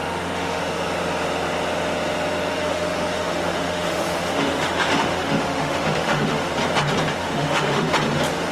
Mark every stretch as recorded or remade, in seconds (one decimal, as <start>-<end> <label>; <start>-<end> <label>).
0.0-0.6 remade; 0.6-2.5 recorded; 2.5-6.5 remade; 6.5-7.2 recorded; 7.2-7.9 remade; 7.9-8.5 recorded